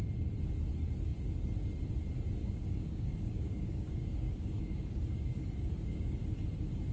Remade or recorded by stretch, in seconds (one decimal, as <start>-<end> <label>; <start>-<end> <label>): 0.0-2.4 recorded; 2.4-6.3 remade; 6.3-6.9 recorded